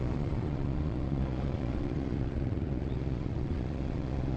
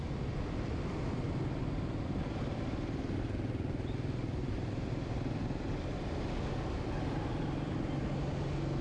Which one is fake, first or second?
first